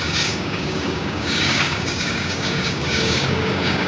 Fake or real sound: fake